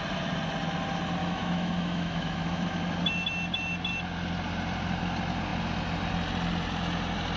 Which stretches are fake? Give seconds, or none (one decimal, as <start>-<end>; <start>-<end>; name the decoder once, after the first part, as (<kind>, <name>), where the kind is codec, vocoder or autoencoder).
1.2-2.8 (autoencoder, DAC-VAE)